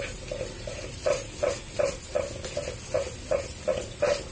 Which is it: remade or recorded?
recorded